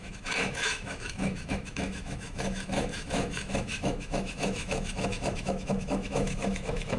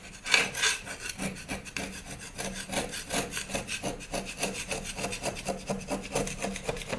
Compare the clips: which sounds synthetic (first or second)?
first